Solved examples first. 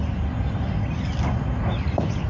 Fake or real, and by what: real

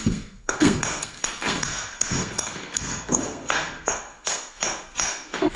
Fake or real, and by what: fake, codec, SNAC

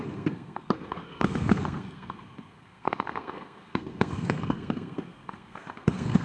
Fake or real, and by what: fake, codec, SNAC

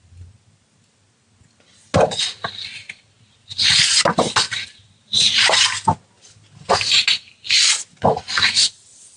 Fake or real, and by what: real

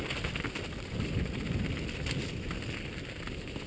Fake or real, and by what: real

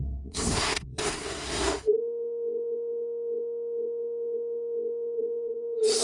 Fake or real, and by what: fake, codec, SNAC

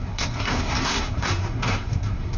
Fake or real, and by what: fake, codec, SNAC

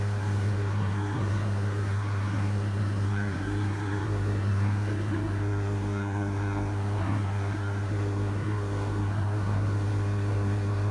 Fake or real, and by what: fake, codec, SNAC